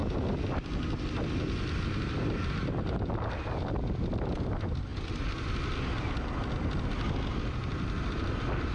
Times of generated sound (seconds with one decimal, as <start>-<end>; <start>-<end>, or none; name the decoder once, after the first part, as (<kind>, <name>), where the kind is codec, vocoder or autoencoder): none